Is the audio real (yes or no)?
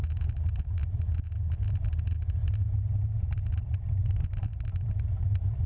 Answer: yes